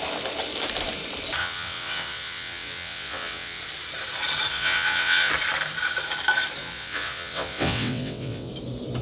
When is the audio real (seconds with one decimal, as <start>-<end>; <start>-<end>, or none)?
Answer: 0.0-1.4; 3.6-4.5; 5.3-6.6; 8.5-9.0